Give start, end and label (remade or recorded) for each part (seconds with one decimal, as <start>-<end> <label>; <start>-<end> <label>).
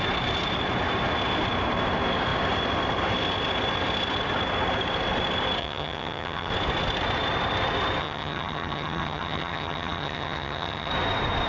0.0-5.6 recorded; 5.6-6.5 remade; 6.5-8.0 recorded; 8.0-10.9 remade; 10.9-11.5 recorded